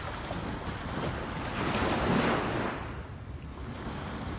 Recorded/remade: recorded